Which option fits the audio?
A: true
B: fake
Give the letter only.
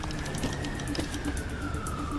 A